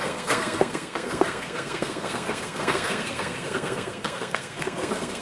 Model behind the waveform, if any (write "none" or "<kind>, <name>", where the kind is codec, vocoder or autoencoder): codec, SNAC